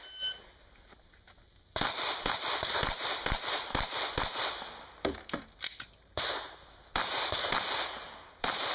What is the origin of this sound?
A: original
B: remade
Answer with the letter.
A